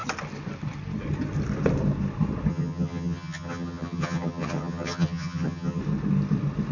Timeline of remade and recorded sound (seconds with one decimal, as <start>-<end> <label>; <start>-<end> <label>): 0.0-2.5 recorded; 2.5-5.8 remade; 5.8-6.7 recorded